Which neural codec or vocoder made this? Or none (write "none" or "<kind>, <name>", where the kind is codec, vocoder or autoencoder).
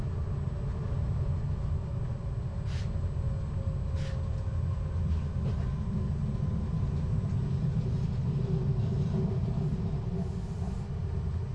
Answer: none